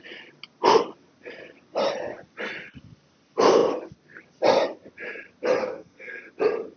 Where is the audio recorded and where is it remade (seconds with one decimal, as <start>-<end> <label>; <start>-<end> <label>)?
0.0-5.6 recorded; 5.6-6.2 remade; 6.2-6.8 recorded